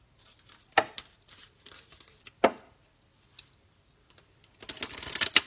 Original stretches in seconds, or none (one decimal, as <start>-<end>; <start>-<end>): 0.0-5.5